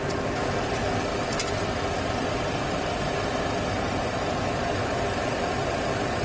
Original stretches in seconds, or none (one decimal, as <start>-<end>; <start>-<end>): 0.0-1.1; 3.4-4.9; 5.8-6.2